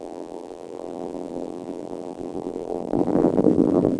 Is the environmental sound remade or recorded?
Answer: remade